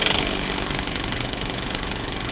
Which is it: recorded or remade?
remade